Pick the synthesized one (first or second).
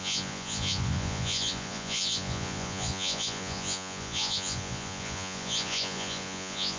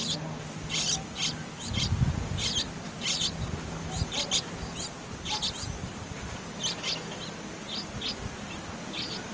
first